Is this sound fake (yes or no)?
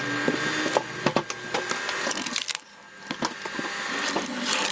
no